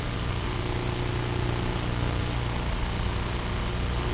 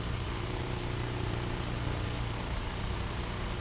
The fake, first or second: second